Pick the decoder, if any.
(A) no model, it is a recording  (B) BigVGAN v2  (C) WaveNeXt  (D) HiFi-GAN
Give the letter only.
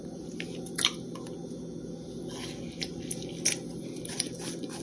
A